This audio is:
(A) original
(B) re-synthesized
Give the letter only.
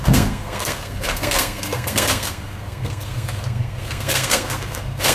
B